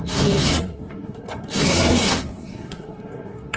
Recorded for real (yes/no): no